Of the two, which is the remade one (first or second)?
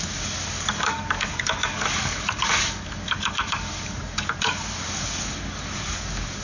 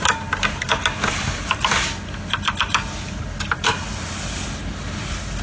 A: first